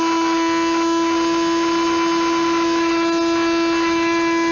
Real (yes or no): yes